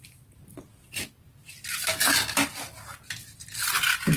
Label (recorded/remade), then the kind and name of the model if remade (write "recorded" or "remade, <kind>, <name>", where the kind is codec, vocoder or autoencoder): recorded